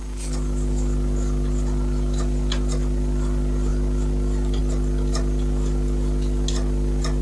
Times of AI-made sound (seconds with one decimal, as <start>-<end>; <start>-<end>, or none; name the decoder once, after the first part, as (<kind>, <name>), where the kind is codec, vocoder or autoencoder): none